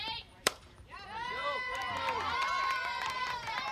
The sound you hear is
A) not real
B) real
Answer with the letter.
A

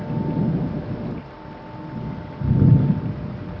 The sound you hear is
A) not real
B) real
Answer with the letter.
B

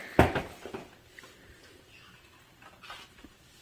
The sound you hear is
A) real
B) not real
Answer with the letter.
A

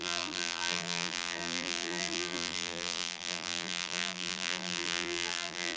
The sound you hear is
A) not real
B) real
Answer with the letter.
A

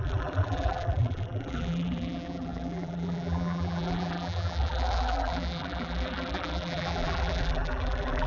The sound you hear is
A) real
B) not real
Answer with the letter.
B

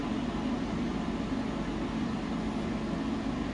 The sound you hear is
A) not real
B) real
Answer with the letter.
B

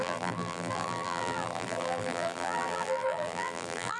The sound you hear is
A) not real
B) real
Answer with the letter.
A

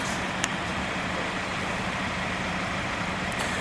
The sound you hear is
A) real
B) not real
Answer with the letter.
B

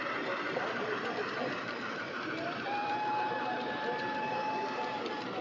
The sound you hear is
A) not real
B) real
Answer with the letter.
A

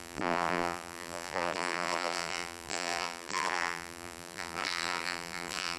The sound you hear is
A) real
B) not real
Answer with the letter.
B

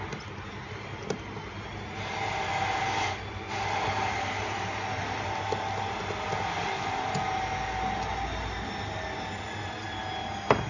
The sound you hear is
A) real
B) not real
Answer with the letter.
A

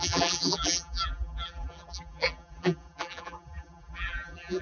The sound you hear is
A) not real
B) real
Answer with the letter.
A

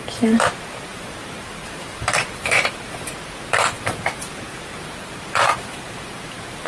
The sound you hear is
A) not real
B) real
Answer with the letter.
A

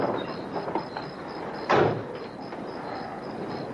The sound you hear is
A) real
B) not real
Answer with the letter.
A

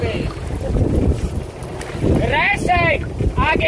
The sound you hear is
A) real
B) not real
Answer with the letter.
A